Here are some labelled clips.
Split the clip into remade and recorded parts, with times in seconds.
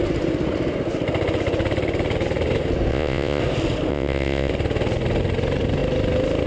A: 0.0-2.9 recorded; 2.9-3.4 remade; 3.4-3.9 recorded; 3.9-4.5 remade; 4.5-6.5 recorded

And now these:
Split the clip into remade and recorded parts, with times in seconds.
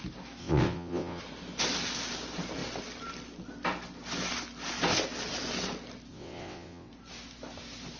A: 0.0-0.4 recorded; 0.4-1.2 remade; 1.2-6.1 recorded; 6.1-6.9 remade; 6.9-8.0 recorded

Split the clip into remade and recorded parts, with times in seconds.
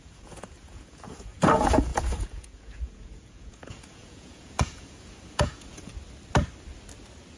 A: 0.0-5.9 remade; 5.9-7.4 recorded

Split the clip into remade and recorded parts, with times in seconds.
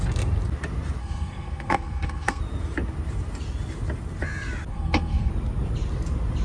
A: 0.0-1.0 recorded; 1.0-2.4 remade; 2.4-4.7 recorded; 4.7-5.3 remade; 5.3-6.4 recorded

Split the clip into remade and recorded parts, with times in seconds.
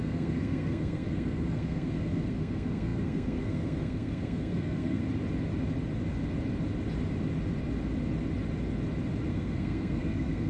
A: 0.0-5.0 remade; 5.0-9.3 recorded; 9.3-10.5 remade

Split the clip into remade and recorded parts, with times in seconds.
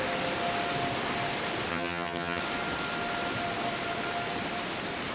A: 0.0-1.7 recorded; 1.7-2.4 remade; 2.4-5.1 recorded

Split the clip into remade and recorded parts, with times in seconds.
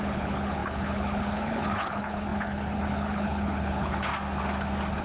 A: 0.0-4.1 remade; 4.1-5.0 recorded